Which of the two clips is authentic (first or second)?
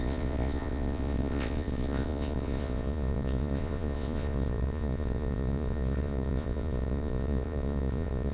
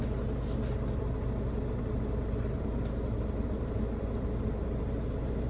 second